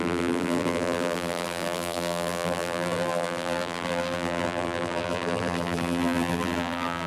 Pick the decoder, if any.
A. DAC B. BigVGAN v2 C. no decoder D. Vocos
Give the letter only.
B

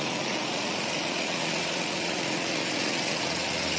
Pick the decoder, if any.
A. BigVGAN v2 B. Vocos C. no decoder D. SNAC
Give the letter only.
B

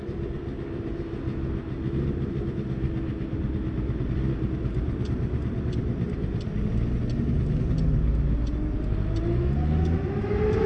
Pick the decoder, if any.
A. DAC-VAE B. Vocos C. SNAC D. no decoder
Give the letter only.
D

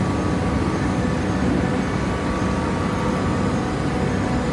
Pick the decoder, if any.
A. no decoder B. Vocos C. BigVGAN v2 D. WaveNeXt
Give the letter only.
A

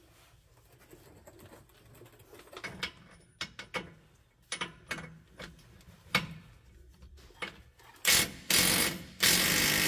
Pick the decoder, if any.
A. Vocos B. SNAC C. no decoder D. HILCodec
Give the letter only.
C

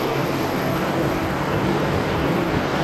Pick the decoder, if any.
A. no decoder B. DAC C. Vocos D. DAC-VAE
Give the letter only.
B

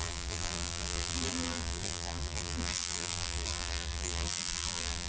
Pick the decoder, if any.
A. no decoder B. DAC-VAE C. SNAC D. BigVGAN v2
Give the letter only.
D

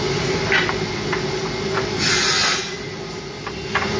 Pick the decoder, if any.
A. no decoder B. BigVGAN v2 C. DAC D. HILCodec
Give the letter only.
A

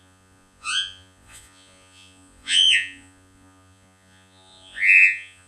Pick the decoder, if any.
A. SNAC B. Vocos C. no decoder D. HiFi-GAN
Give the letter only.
B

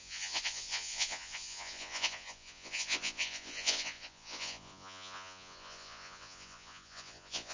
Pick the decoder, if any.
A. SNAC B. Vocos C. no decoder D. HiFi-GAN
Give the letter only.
B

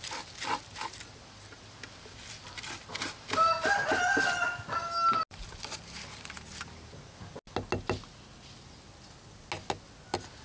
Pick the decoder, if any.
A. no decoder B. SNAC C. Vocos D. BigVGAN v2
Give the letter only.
A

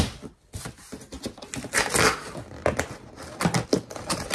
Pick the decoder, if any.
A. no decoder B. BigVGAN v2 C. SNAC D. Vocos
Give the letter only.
A